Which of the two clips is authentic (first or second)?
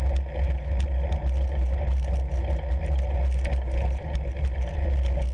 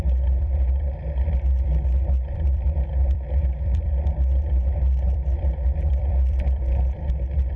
first